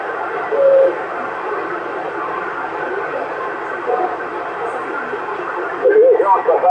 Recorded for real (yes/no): yes